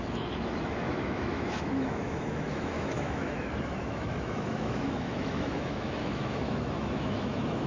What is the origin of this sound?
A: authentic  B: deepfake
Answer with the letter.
B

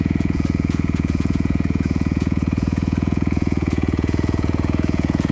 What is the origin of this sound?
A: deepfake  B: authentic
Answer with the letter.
A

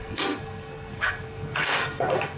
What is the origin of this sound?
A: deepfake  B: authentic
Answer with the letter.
A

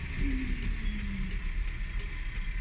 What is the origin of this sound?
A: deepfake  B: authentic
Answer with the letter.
B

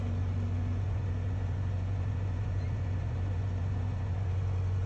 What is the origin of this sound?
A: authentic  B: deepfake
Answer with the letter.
B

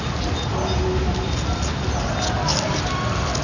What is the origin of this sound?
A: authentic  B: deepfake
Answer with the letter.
A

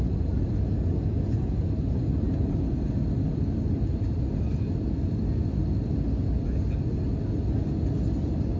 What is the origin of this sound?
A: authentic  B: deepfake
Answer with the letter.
A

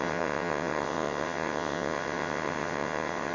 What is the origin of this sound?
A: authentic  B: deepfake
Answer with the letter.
B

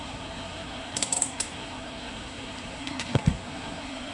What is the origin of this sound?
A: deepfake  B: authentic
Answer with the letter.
A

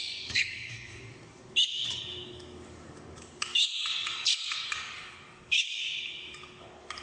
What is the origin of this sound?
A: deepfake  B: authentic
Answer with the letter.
A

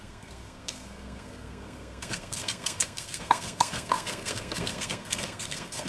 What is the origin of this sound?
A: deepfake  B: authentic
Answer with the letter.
A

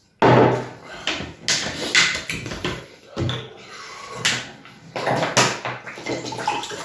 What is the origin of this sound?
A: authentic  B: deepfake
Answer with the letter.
A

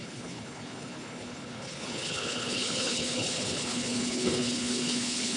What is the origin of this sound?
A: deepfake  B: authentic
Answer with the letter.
A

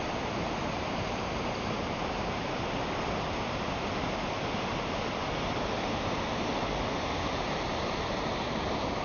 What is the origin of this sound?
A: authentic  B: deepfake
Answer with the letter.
B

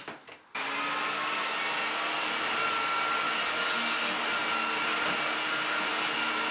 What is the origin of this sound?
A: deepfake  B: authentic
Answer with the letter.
B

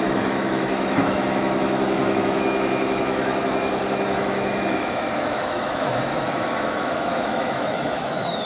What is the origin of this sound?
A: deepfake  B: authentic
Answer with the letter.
A